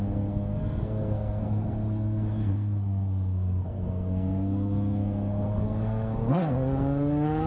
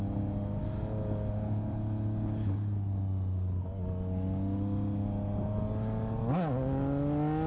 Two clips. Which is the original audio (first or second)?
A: second